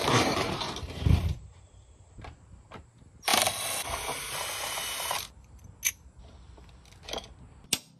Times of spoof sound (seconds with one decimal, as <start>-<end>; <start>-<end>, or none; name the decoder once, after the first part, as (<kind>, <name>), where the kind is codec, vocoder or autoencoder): 0.0-2.9 (vocoder, BigVGAN v2)